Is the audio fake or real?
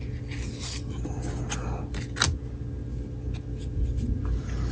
real